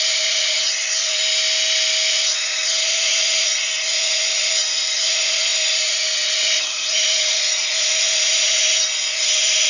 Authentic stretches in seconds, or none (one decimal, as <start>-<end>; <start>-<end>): 1.2-2.1